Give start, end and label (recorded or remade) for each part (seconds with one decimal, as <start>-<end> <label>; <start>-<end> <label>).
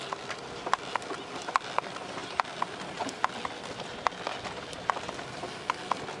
0.0-6.2 recorded